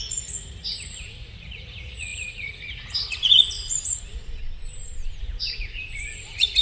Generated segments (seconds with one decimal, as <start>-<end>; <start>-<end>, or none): 0.0-4.4; 5.2-6.6